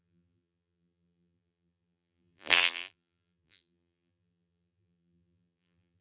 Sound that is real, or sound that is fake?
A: fake